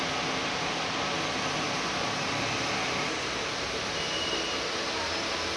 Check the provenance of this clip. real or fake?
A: real